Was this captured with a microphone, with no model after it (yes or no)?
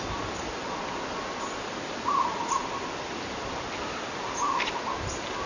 yes